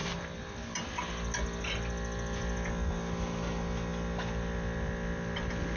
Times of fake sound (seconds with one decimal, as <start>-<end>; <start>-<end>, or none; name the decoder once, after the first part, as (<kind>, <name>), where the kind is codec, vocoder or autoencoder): none